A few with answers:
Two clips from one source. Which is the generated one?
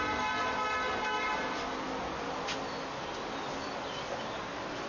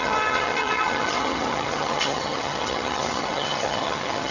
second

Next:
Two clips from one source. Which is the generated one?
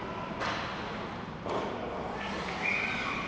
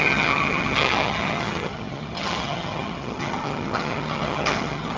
second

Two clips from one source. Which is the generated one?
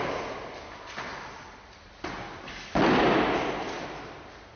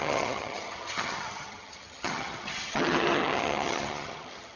second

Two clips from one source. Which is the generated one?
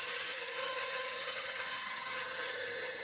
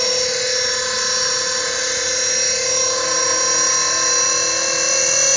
first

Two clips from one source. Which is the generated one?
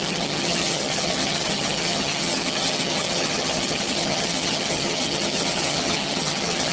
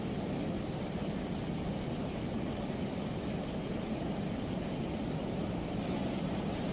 first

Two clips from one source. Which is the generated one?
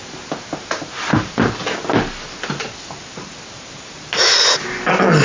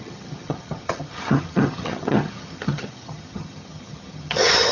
second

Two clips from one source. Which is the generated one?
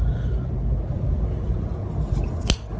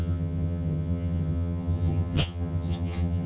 second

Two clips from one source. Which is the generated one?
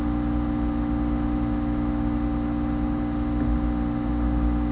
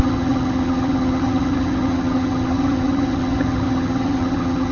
second